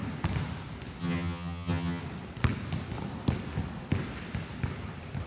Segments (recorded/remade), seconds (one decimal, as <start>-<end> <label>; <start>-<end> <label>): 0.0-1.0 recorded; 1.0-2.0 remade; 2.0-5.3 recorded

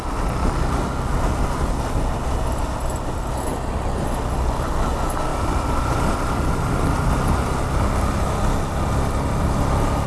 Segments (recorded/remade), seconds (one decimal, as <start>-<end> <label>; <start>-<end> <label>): 0.0-5.3 recorded; 5.3-9.7 remade; 9.7-10.1 recorded

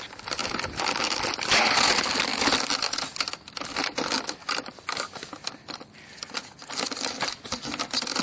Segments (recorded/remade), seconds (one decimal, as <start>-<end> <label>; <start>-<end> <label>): 0.0-8.2 recorded

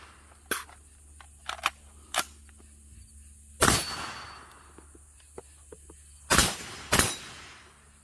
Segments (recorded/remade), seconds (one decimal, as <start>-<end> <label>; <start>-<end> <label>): 0.0-6.4 recorded; 6.4-7.2 remade; 7.2-8.0 recorded

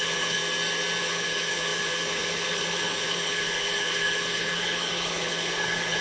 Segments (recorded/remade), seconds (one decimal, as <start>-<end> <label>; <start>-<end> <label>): 0.0-0.4 remade; 0.4-1.0 recorded; 1.0-6.0 remade